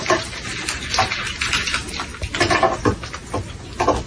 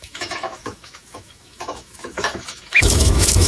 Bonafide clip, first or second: first